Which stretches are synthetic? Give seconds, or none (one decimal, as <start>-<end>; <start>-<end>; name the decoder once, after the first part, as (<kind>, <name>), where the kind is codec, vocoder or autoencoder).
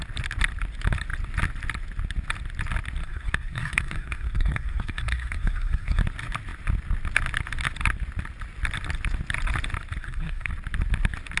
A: 3.0-6.0 (codec, SNAC); 10.0-10.5